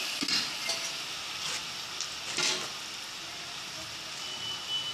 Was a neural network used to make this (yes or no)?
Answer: no